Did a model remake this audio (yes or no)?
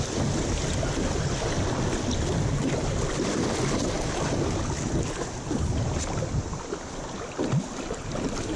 no